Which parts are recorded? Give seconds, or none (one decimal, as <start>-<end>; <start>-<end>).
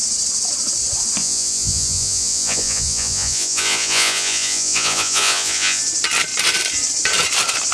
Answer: 0.0-1.2; 5.8-7.7